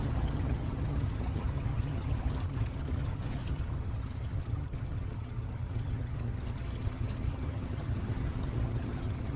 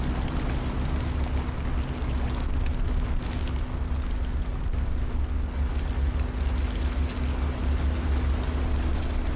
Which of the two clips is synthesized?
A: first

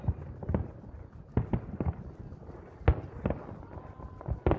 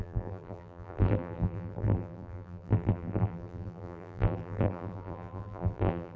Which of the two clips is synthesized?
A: second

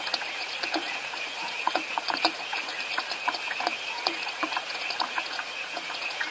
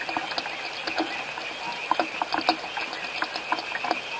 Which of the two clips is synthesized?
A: first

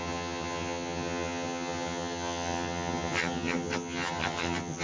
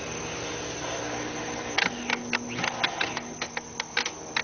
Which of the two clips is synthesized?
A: first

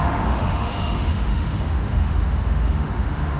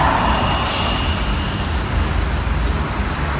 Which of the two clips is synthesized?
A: first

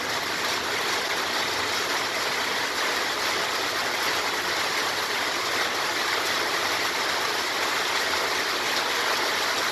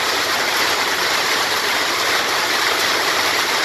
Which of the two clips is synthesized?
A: second